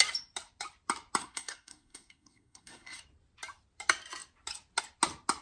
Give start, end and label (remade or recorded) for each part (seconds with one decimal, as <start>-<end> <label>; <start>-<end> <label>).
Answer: 0.0-1.2 recorded; 1.2-3.0 remade; 3.0-5.4 recorded